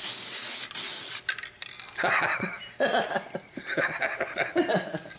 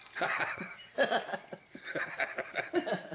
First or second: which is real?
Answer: first